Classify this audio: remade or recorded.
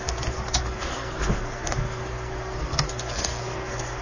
remade